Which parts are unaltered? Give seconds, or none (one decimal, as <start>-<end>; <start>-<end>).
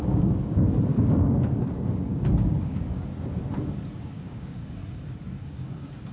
3.1-3.9; 4.8-5.4